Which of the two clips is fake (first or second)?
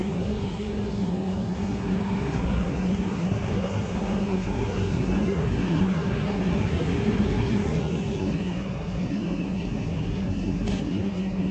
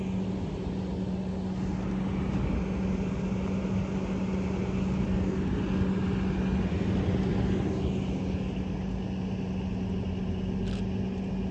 first